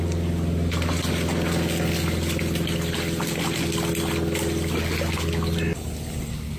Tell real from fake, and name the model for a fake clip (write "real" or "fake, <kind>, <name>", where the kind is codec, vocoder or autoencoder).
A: real